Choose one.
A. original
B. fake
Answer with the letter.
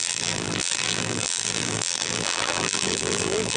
B